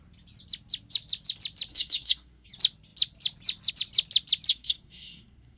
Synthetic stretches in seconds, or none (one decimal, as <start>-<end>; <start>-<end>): 1.7-2.5; 4.5-5.6